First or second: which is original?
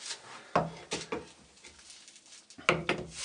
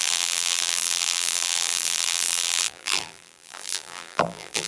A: first